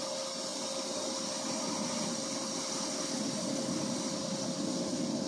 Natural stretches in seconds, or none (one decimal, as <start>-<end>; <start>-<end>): 0.0-5.3